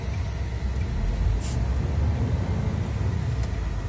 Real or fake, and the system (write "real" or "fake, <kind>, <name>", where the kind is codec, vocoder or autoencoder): real